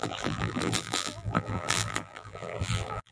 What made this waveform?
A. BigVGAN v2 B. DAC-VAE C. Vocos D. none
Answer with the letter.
A